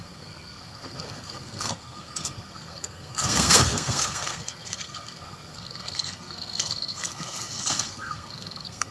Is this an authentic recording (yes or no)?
no